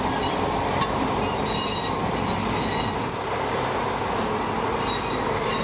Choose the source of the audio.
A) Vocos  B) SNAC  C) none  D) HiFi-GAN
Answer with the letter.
C